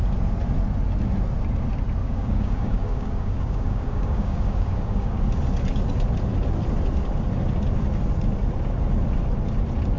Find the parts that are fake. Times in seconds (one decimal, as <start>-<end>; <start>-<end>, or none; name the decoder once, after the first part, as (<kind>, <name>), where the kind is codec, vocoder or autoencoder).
2.0-5.2 (codec, DAC)